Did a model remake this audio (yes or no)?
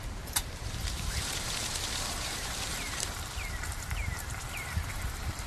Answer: yes